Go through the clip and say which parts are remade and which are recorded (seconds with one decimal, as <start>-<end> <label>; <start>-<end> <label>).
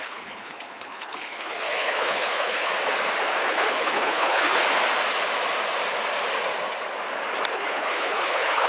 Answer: 0.0-2.7 remade; 2.7-3.5 recorded; 3.5-4.6 remade; 4.6-7.5 recorded; 7.5-8.7 remade